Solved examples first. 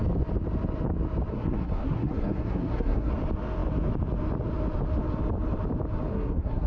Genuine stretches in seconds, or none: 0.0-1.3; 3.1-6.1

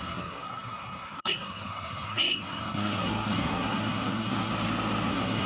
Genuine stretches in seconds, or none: 4.5-5.1

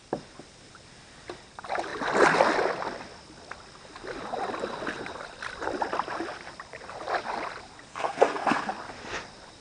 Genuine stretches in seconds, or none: 0.0-7.9; 8.7-9.6

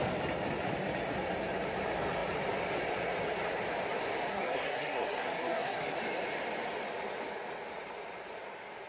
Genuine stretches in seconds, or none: 0.0-4.3; 6.0-8.9

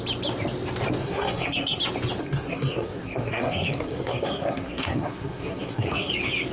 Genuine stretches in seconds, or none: 0.0-1.0; 1.8-2.2; 6.1-6.5